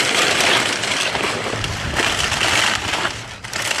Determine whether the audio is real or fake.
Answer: fake